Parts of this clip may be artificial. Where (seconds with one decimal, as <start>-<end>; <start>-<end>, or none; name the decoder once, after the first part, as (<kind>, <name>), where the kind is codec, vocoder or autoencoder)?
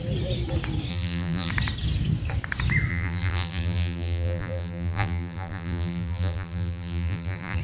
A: 0.9-1.5 (vocoder, BigVGAN v2); 2.9-7.6